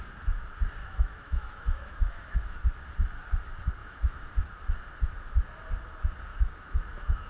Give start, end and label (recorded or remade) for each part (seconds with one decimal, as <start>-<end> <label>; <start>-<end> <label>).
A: 0.0-0.8 recorded; 0.8-2.6 remade; 2.6-3.8 recorded; 3.8-4.4 remade; 4.4-6.3 recorded; 6.3-7.3 remade